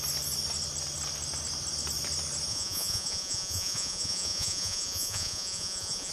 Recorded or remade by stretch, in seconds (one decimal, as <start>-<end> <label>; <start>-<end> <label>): 0.0-2.5 recorded; 2.5-6.1 remade